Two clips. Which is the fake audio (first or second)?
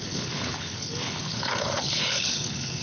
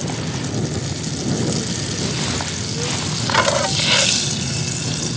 first